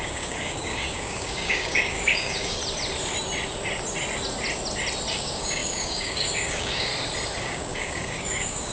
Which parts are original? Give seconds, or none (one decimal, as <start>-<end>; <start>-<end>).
2.6-5.1; 6.9-7.4